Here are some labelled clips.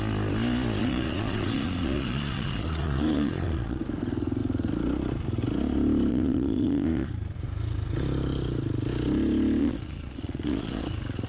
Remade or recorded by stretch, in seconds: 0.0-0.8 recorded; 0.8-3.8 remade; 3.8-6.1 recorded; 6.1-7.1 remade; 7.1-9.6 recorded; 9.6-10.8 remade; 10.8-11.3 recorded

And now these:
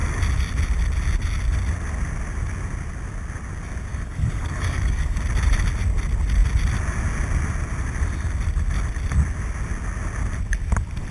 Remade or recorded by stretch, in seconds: 0.0-3.9 recorded; 3.9-5.2 remade; 5.2-11.1 recorded

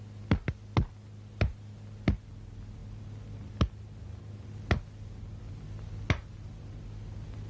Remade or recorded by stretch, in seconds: 0.0-7.5 recorded

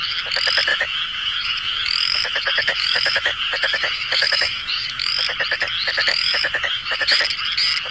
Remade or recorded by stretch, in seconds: 0.0-0.7 recorded; 0.7-5.1 remade; 5.1-6.1 recorded; 6.1-7.2 remade; 7.2-7.9 recorded

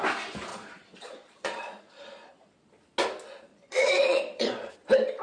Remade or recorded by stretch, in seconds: 0.0-0.5 recorded; 0.5-2.7 remade; 2.7-3.5 recorded; 3.5-4.7 remade; 4.7-5.2 recorded

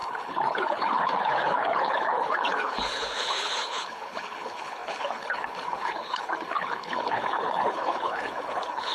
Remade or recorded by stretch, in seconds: 0.0-8.9 remade

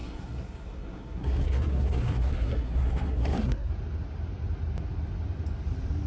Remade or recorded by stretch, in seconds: 0.0-3.7 remade; 3.7-6.1 recorded